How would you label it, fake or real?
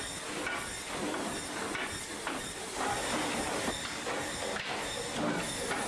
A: real